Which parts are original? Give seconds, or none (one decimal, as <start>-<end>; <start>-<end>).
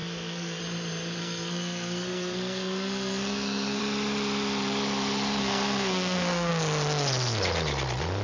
0.6-1.2; 3.8-5.4; 6.5-8.2